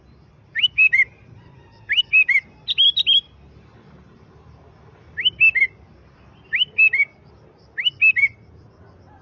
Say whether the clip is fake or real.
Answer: real